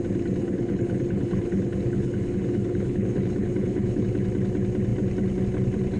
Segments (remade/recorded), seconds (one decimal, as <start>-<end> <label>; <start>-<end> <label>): 0.0-0.4 recorded; 0.4-4.0 remade; 4.0-6.0 recorded